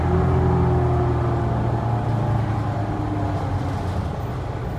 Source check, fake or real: real